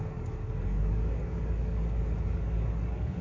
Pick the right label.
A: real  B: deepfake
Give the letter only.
B